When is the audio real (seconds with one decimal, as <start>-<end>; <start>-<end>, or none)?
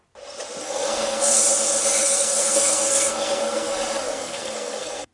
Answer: 0.0-0.6; 1.4-2.0